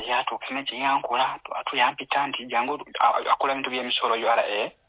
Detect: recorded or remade recorded